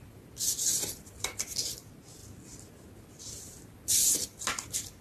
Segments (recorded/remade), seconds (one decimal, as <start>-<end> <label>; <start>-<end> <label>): 0.0-5.0 recorded